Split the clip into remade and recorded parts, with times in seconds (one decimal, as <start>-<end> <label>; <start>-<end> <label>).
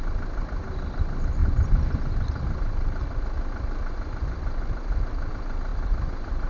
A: 0.0-6.5 recorded